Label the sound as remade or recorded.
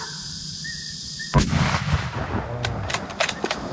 recorded